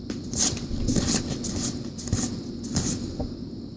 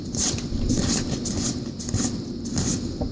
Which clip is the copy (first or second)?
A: second